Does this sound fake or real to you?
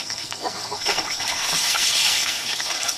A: fake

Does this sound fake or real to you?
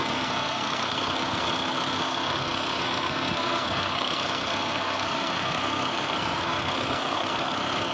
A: fake